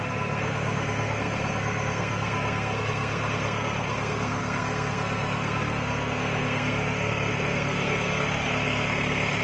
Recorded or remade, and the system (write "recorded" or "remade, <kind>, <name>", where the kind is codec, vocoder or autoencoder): remade, codec, SNAC